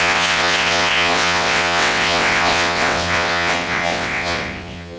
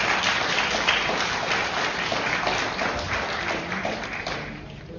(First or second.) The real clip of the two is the second